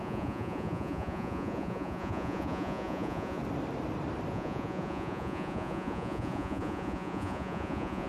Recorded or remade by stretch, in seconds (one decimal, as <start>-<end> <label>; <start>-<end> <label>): 0.0-3.4 remade; 3.4-4.3 recorded; 4.3-8.1 remade